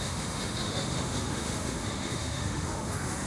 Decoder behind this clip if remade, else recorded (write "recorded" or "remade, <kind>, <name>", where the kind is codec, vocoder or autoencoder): remade, autoencoder, DAC-VAE